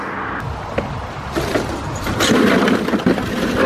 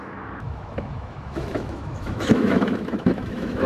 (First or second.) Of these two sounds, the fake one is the second